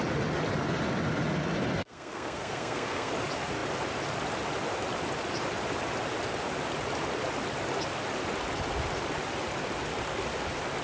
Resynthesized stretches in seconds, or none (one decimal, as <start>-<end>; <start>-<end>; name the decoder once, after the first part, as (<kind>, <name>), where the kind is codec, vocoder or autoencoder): 1.8-3.1 (codec, SNAC)